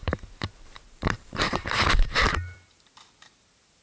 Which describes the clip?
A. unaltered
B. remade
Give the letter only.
B